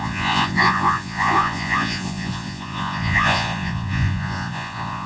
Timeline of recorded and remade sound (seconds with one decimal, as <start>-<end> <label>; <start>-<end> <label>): 0.0-5.1 remade